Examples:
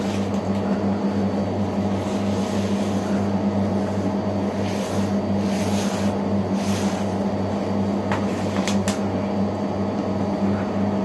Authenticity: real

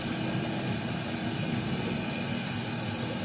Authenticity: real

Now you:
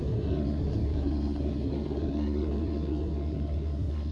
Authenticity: fake